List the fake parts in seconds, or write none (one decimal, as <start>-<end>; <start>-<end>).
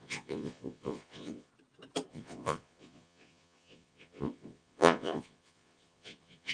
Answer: 0.0-1.5; 2.1-6.5